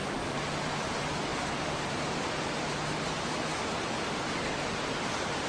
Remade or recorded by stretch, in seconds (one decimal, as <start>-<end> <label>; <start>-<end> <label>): 0.0-5.5 recorded